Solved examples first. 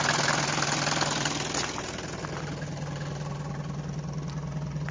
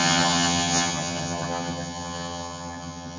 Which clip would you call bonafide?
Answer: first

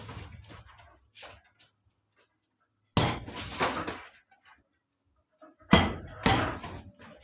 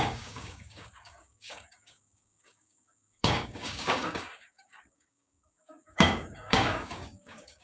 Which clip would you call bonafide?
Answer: first